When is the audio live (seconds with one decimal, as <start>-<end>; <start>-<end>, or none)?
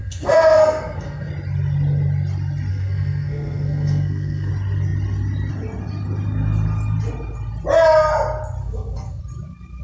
1.3-2.7; 4.5-8.6; 9.2-9.8